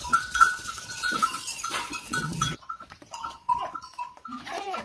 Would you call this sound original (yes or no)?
no